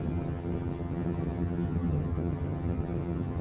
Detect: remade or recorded remade